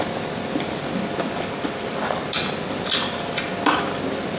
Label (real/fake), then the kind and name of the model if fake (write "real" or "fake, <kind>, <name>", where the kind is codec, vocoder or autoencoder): real